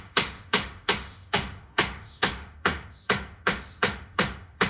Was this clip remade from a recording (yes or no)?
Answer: yes